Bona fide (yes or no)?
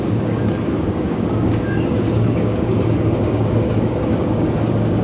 no